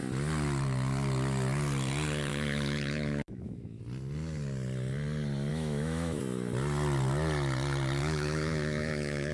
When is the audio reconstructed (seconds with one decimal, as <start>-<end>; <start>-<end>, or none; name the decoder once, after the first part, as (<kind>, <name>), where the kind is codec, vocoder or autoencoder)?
2.3-3.8 (autoencoder, DAC-VAE); 5.5-6.2; 8.0-9.3

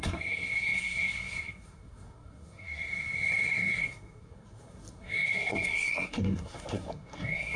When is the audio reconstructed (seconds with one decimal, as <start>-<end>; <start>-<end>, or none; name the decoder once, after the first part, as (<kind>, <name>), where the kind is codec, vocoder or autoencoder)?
0.0-7.6 (codec, SNAC)

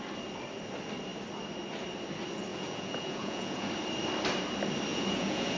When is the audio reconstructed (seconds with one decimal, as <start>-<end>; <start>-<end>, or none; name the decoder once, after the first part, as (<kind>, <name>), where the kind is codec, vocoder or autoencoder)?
2.5-3.7 (vocoder, Vocos); 4.9-5.6

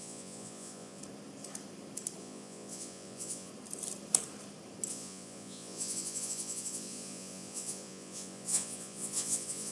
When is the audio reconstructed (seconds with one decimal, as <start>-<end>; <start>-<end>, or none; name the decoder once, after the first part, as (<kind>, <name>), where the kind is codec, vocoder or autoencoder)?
0.0-1.0 (vocoder, Vocos); 2.2-3.5; 4.9-9.7

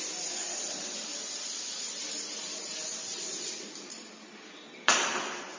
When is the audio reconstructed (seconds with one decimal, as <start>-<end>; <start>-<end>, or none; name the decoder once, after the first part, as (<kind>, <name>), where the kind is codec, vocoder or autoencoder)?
0.0-5.6 (vocoder, BigVGAN v2)

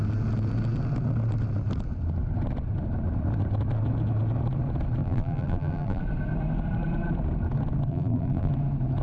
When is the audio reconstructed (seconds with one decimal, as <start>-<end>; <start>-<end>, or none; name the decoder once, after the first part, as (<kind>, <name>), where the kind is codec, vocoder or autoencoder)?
5.0-6.0 (vocoder, BigVGAN v2); 7.9-8.5

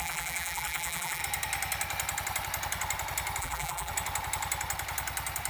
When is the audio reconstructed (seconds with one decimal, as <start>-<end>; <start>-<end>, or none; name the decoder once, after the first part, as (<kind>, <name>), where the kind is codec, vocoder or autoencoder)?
0.0-1.2 (vocoder, BigVGAN v2); 3.4-3.9